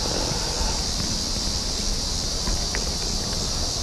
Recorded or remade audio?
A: recorded